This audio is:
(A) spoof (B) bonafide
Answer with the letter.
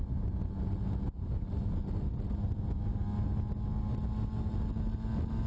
B